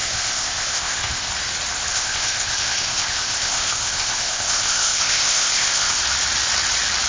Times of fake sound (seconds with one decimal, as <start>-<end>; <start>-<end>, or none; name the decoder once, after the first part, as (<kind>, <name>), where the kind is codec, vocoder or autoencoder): 0.0-1.3 (codec, ZipCodec); 1.9-6.0